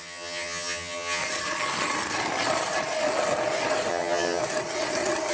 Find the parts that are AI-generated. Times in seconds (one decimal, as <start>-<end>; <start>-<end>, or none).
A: 0.0-1.2; 3.9-4.4